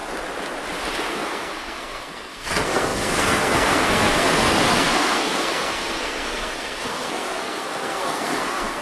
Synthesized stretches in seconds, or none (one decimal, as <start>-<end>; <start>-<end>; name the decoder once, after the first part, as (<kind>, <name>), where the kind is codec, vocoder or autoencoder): 1.1-8.8 (codec, SNAC)